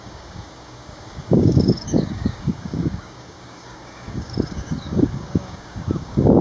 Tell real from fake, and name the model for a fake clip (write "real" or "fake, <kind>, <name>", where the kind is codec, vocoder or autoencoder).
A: fake, codec, DAC